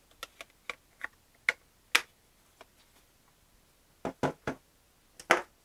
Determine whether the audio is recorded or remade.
recorded